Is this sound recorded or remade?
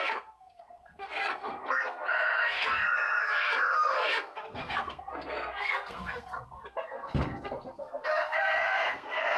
remade